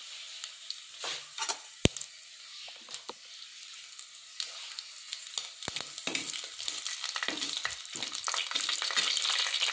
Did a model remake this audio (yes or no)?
no